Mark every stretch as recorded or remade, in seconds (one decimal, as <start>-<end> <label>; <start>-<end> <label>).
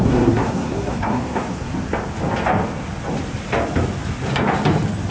0.0-1.7 remade; 1.7-5.1 recorded